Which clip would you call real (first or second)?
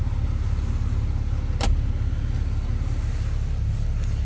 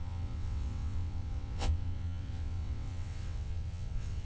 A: first